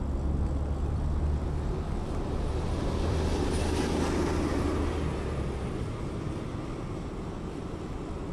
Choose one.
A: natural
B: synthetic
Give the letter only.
A